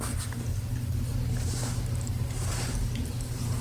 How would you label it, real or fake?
fake